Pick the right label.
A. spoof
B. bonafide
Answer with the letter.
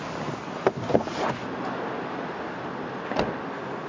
B